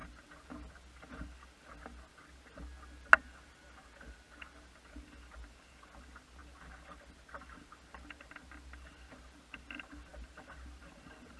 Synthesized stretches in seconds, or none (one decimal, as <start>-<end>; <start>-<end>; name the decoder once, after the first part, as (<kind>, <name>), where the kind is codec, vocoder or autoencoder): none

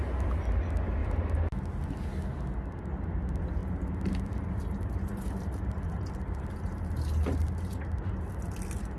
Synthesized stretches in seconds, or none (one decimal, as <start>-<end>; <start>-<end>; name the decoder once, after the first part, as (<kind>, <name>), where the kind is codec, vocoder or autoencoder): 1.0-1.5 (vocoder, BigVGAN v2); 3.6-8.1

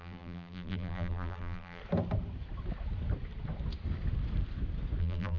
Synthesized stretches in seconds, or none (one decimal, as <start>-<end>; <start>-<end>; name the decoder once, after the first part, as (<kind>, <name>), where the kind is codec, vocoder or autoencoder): 0.0-1.8 (vocoder, BigVGAN v2); 5.0-5.4

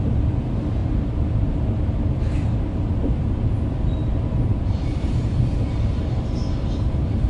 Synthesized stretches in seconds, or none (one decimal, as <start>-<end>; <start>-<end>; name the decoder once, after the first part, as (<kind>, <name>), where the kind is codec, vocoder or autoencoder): 0.8-1.5 (vocoder, BigVGAN v2); 4.0-7.3

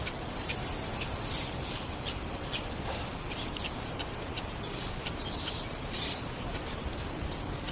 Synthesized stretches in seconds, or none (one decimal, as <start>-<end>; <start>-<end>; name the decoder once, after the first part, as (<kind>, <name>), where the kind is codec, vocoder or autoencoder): 0.0-0.7 (vocoder, BigVGAN v2); 3.3-7.7

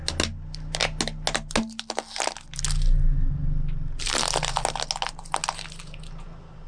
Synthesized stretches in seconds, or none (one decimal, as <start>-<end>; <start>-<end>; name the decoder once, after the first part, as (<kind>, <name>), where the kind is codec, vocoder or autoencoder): none

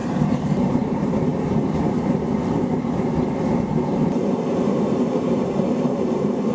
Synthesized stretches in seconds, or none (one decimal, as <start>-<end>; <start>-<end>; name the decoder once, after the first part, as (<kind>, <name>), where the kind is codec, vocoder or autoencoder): 0.0-6.5 (vocoder, BigVGAN v2)